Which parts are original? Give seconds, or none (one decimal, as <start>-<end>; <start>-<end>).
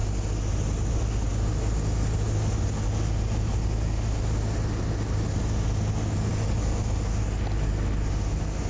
0.0-8.7